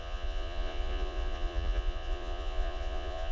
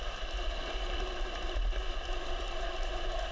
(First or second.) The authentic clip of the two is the second